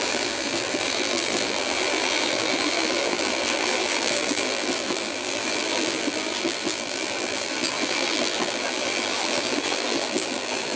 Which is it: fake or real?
fake